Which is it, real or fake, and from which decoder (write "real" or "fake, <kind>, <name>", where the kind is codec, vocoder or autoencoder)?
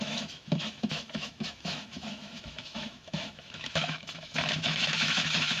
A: fake, autoencoder, DAC-VAE